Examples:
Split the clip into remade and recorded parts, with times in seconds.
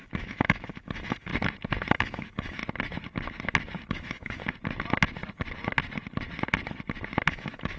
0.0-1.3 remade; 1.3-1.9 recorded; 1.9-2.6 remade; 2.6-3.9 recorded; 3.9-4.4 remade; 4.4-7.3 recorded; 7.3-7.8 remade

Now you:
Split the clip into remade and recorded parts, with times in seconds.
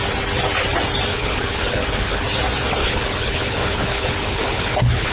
0.0-1.1 recorded; 1.1-2.2 remade; 2.2-2.8 recorded; 2.8-5.1 remade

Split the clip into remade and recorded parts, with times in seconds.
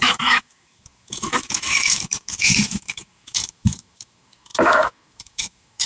0.0-5.9 remade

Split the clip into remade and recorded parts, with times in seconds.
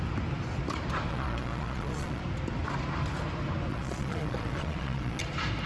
0.0-1.1 recorded; 1.1-2.2 remade; 2.2-3.7 recorded; 3.7-5.2 remade; 5.2-5.7 recorded